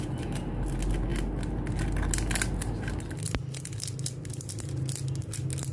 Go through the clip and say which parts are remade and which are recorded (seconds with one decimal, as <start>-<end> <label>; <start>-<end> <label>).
0.0-5.7 recorded